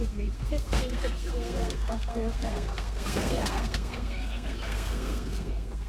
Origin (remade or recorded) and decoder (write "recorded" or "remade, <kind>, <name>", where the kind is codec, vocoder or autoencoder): remade, codec, SNAC